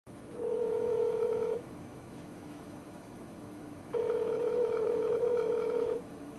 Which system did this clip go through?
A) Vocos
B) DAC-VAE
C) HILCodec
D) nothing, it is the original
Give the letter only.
B